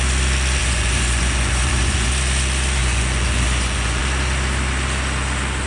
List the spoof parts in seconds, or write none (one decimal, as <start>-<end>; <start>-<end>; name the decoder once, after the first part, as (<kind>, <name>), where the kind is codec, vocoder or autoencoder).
0.6-2.1 (vocoder, Vocos); 2.8-4.0